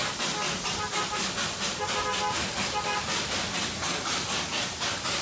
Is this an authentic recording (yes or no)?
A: yes